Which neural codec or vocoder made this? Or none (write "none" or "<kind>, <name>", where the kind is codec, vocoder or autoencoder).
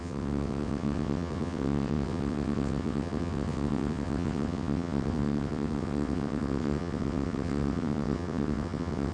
vocoder, WaveNeXt